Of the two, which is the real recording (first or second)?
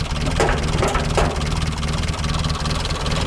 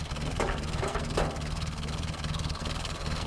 first